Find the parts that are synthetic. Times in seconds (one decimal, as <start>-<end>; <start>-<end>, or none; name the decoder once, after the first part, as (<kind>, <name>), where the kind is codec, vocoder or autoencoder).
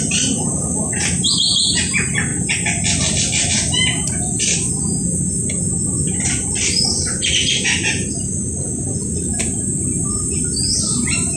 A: 0.0-2.3 (vocoder, BigVGAN v2); 7.3-11.4